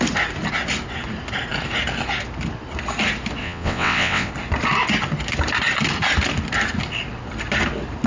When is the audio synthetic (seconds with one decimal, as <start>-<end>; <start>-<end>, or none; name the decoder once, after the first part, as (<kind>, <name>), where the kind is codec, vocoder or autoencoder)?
3.4-4.3 (vocoder, WaveNeXt)